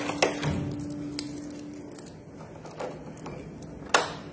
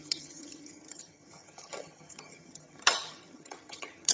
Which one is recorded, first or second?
first